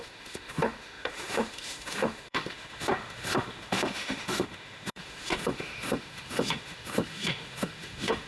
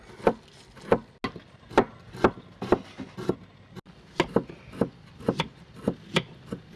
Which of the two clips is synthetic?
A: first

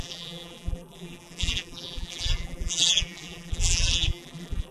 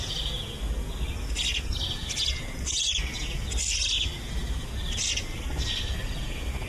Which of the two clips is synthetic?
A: first